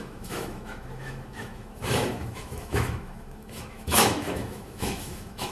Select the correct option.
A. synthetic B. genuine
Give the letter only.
A